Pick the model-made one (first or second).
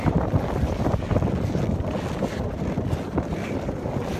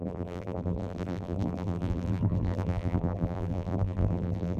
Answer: second